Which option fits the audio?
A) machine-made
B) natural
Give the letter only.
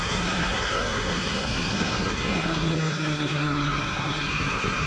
A